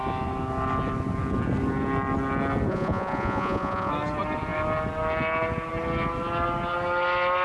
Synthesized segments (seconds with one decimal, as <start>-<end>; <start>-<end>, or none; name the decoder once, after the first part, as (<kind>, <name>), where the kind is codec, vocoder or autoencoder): 2.7-3.9 (vocoder, Vocos)